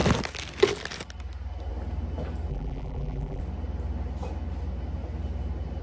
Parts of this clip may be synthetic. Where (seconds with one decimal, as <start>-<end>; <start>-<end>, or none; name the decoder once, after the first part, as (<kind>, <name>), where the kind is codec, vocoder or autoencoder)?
2.5-3.4 (vocoder, BigVGAN v2)